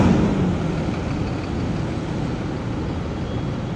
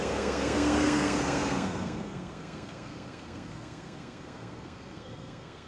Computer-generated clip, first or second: second